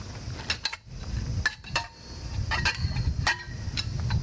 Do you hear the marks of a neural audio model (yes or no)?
no